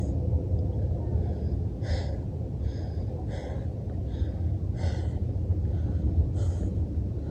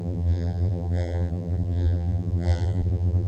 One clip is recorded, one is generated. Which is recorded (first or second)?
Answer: first